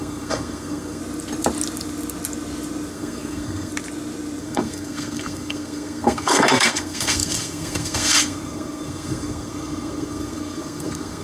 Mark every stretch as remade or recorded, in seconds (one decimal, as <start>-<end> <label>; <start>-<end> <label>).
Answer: 0.0-1.0 remade; 1.0-2.9 recorded; 2.9-3.7 remade; 3.7-4.4 recorded; 4.4-11.2 remade